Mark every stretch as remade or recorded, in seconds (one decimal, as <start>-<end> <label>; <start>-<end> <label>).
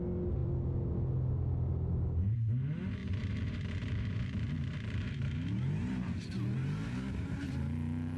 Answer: 0.0-3.0 recorded; 3.0-7.6 remade; 7.6-8.2 recorded